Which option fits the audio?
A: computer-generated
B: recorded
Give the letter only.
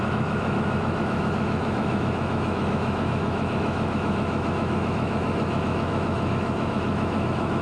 A